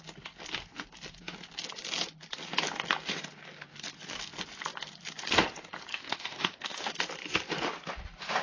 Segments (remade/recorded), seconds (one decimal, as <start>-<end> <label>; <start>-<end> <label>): 0.0-5.9 recorded; 5.9-6.9 remade; 6.9-8.4 recorded